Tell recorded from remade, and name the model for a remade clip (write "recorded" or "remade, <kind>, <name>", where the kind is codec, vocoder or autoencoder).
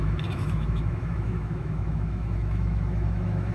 remade, autoencoder, DAC-VAE